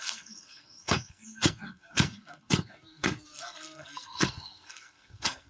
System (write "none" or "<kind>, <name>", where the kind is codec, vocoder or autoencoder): codec, SNAC